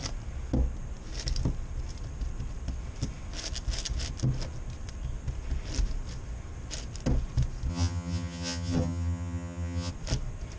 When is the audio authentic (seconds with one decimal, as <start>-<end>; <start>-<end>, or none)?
0.0-7.7; 9.9-10.6